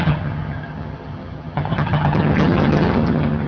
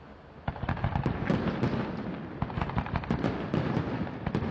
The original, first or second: second